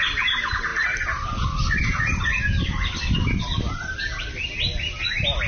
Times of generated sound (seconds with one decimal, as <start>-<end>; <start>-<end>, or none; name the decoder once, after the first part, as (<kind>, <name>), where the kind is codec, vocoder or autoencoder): none